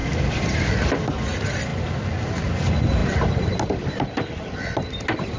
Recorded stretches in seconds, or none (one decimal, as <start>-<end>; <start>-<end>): 0.0-5.4